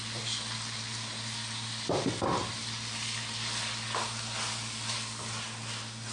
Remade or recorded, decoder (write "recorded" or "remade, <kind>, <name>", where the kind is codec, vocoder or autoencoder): recorded